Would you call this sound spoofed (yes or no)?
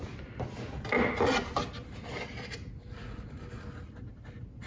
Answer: no